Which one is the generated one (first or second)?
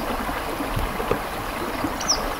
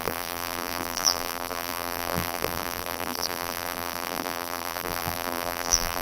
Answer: second